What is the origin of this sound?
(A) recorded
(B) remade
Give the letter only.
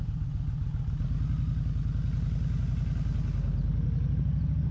A